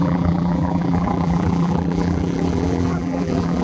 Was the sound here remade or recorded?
remade